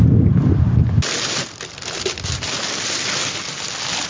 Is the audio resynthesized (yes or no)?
no